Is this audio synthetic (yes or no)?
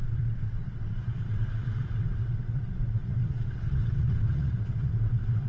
yes